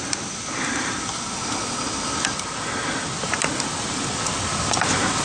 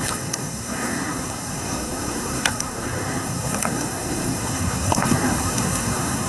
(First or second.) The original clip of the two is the first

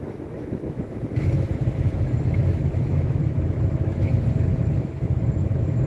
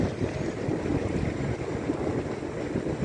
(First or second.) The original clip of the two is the second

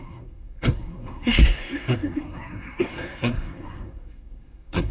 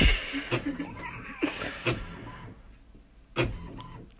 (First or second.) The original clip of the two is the second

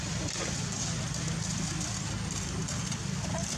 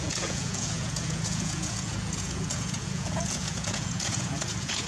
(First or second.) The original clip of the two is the first